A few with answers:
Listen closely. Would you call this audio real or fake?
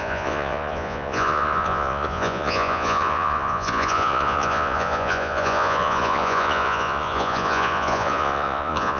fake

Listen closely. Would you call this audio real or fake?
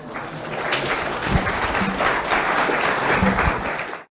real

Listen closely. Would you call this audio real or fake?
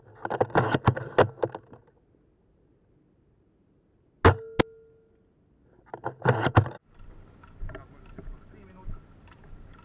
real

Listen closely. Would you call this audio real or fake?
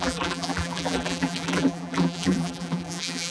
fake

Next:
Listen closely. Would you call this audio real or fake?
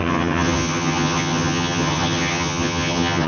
fake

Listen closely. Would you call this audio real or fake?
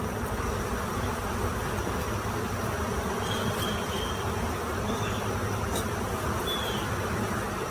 real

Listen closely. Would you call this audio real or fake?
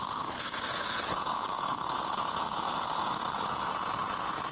fake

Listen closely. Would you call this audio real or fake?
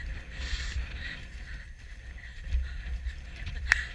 fake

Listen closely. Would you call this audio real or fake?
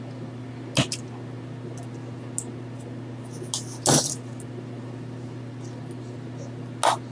real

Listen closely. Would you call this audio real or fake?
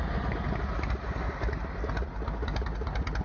real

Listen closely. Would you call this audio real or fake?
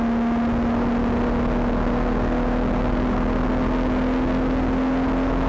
real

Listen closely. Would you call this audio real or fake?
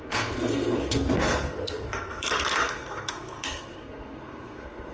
fake